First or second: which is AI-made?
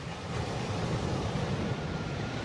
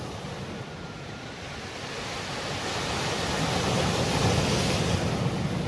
first